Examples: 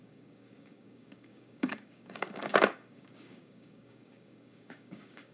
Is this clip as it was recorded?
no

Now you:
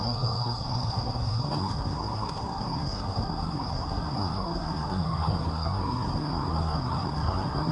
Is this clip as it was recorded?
no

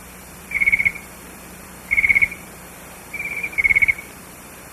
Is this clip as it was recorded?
no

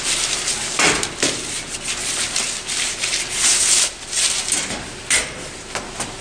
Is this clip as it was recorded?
yes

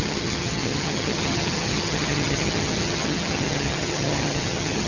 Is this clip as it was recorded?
no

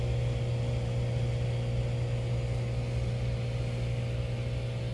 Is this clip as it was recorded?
yes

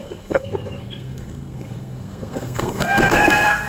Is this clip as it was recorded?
no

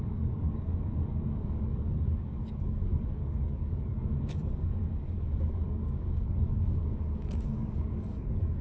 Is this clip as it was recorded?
no